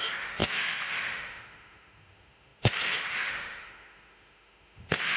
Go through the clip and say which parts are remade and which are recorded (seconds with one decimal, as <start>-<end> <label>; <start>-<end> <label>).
0.0-5.2 remade